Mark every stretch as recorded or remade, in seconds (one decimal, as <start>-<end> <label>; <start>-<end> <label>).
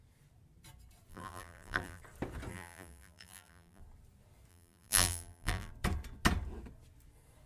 0.0-1.1 recorded; 1.1-2.0 remade; 2.0-2.5 recorded; 2.5-3.8 remade; 3.8-4.5 recorded; 4.5-5.7 remade; 5.7-7.5 recorded